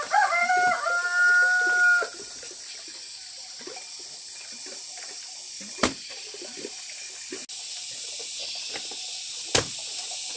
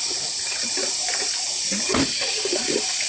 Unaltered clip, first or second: first